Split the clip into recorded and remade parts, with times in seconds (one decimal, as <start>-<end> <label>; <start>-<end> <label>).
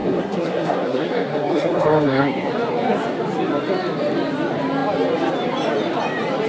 0.0-2.5 remade; 2.5-6.5 recorded